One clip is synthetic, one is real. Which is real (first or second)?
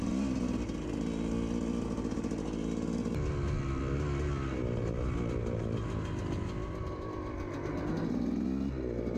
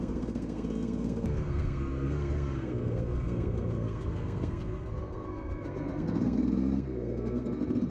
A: first